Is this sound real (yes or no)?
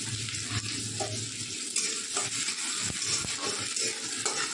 yes